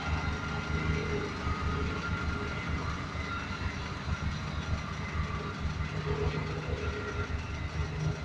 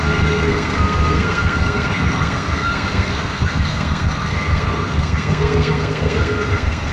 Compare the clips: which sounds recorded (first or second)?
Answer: first